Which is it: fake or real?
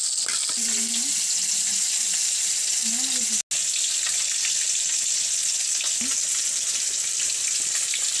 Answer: real